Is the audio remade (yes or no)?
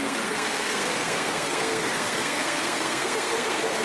yes